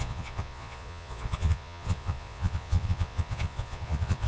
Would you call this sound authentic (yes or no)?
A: no